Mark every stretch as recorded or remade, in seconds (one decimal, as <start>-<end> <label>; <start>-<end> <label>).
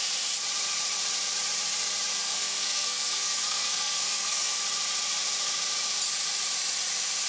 0.0-2.1 recorded; 2.1-4.6 remade; 4.6-7.3 recorded